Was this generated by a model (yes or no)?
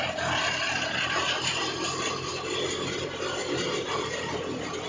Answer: no